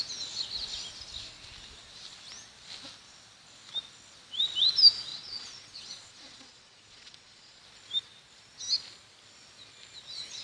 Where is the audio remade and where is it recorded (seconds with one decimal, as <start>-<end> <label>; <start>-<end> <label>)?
0.0-5.1 recorded; 5.1-7.6 remade; 7.6-10.4 recorded